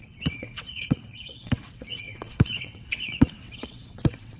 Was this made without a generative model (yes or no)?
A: no